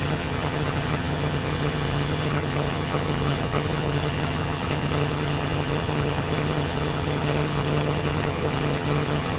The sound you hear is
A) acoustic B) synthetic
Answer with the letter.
B